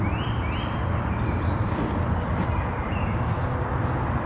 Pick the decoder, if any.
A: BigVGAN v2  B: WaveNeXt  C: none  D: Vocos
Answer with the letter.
C